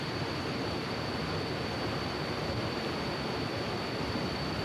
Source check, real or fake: real